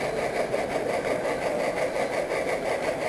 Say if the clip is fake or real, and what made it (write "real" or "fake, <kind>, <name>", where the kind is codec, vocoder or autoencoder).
real